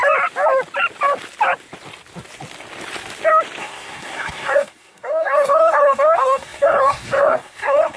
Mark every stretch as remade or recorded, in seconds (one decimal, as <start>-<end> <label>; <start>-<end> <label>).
0.0-3.6 recorded; 3.6-8.0 remade